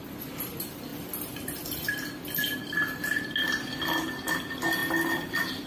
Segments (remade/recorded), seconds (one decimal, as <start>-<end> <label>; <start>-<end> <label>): 0.0-5.7 recorded